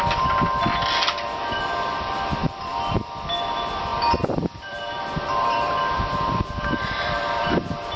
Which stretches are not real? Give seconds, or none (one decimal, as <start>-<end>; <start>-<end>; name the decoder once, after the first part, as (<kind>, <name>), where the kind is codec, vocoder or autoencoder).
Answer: 2.4-3.1 (vocoder, BigVGAN v2); 3.9-8.0